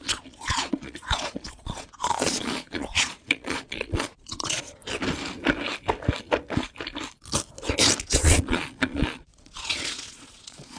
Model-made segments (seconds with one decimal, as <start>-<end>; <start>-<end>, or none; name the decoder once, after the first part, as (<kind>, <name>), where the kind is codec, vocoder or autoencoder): 0.0-4.8 (vocoder, Vocos); 8.0-10.8